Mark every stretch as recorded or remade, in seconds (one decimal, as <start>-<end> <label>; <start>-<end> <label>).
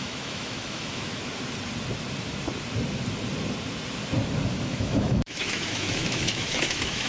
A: 0.0-1.2 remade; 1.2-4.5 recorded; 4.5-7.1 remade